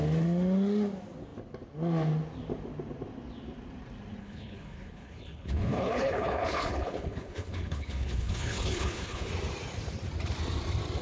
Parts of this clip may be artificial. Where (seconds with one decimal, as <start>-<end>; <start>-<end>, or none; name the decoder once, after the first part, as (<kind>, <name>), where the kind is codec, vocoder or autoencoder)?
4.2-9.3 (codec, HILCodec)